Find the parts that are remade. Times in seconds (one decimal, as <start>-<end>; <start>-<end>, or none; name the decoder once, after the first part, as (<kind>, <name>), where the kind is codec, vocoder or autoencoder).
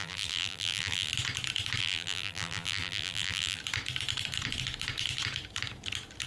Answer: 0.0-1.1 (vocoder, BigVGAN v2); 1.8-3.6